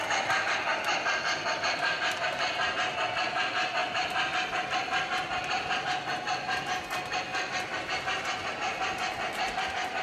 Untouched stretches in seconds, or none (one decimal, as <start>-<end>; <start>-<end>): 0.0-10.0